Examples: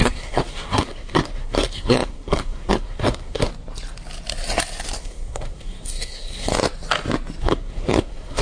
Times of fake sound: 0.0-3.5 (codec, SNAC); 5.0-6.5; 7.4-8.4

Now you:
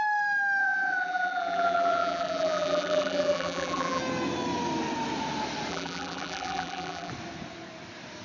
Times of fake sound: 0.6-4.0 (vocoder, BigVGAN v2); 5.7-7.1

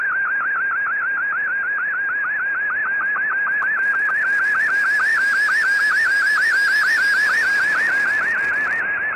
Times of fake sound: none

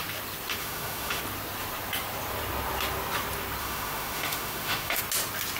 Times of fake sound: 0.6-1.2 (autoencoder, DAC-VAE); 3.6-5.0

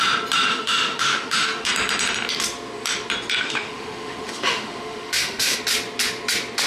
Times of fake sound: 0.5-1.7 (autoencoder, DAC-VAE); 3.4-5.6

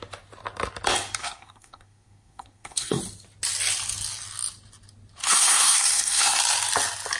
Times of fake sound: 1.2-3.0 (codec, SNAC); 5.2-6.4